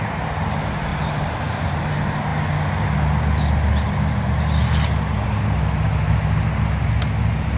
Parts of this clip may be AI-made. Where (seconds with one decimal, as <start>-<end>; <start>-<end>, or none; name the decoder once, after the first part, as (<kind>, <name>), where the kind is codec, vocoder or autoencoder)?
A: 0.9-1.8 (vocoder, BigVGAN v2)